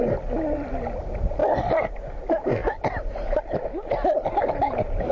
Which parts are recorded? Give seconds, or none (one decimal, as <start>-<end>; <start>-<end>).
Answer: 0.0-5.1